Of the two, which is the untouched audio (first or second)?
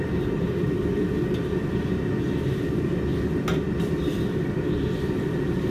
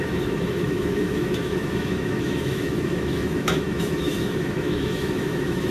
first